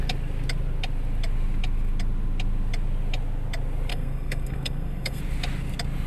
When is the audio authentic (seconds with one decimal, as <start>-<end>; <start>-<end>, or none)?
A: 0.0-3.9; 5.2-6.1